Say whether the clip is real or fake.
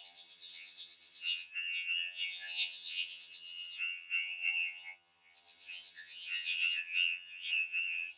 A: fake